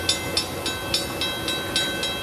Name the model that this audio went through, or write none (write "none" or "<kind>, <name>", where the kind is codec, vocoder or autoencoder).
none